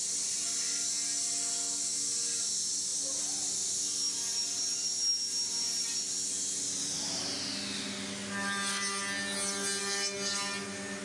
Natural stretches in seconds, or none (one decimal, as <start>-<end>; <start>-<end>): 0.0-2.9; 4.2-11.0

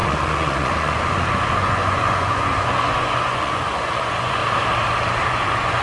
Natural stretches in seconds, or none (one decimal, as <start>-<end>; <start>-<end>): 4.4-5.3

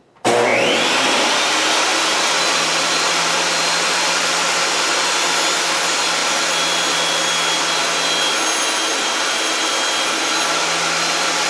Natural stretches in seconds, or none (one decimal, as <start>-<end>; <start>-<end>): 0.0-11.5

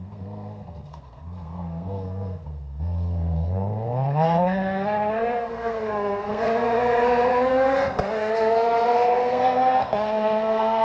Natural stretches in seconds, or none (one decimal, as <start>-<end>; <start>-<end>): none

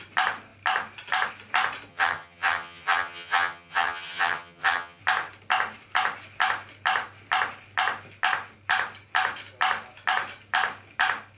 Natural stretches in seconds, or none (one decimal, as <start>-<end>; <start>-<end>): 0.0-1.9; 5.0-11.4

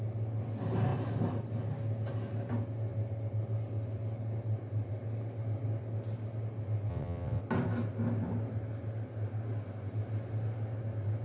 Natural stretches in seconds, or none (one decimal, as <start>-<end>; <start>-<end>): 0.0-6.9; 7.4-11.2

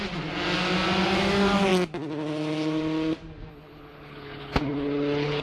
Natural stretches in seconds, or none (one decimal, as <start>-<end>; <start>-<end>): 0.0-3.5